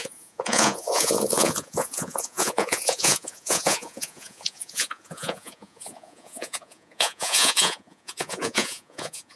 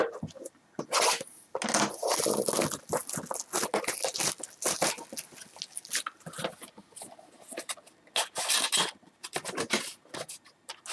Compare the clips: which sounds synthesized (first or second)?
first